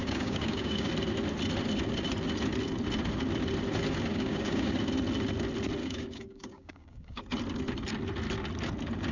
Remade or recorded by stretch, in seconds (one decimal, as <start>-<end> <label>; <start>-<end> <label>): 0.0-0.9 remade; 0.9-4.1 recorded; 4.1-4.7 remade; 4.7-5.8 recorded; 5.8-7.2 remade; 7.2-9.1 recorded